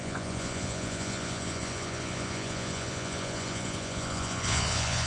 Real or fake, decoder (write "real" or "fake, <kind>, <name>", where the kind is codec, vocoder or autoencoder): fake, vocoder, Vocos